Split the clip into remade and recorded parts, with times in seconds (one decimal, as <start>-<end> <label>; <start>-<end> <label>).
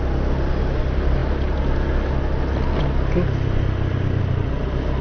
0.0-5.0 recorded